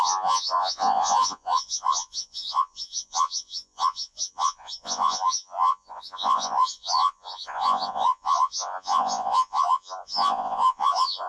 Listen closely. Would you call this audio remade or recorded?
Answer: remade